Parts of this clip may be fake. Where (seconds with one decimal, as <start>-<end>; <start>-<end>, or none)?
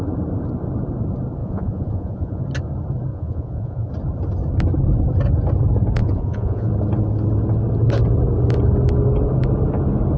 1.4-2.4; 3.1-3.9; 6.0-6.7